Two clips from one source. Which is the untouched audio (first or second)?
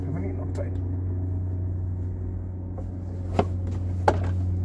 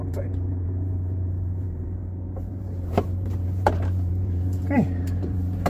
first